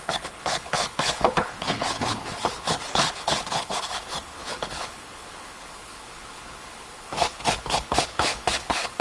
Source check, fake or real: fake